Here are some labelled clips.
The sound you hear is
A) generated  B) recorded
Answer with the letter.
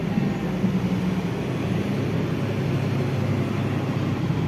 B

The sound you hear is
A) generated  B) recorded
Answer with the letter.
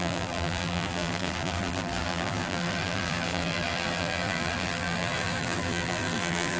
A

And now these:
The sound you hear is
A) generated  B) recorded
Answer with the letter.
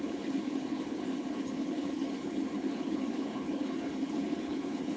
A